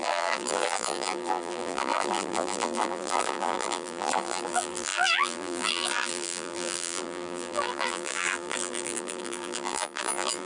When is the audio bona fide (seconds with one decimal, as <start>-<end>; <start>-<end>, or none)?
none